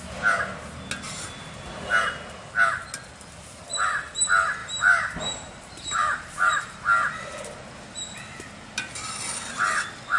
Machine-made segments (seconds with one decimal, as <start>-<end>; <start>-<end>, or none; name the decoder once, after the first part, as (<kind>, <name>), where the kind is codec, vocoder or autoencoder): 4.6-6.5 (vocoder, BigVGAN v2)